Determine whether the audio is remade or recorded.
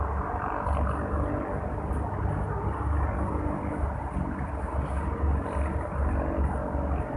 recorded